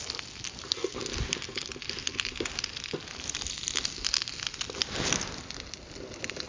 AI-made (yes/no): no